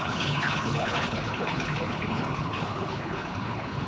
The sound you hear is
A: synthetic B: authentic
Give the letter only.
A